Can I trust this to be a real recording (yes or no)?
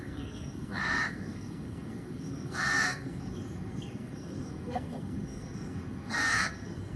no